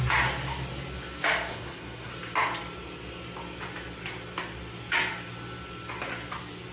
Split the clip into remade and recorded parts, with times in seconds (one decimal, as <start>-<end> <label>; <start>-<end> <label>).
0.0-1.5 recorded; 1.5-2.1 remade; 2.1-6.7 recorded